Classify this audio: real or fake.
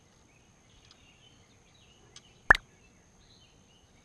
real